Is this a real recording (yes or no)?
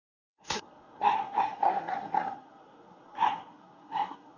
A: no